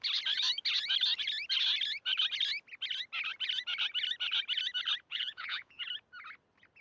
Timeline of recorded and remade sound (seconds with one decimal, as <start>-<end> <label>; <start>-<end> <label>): 0.0-5.1 recorded; 5.1-5.8 remade; 5.8-6.8 recorded